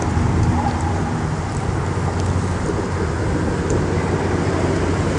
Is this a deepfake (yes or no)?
no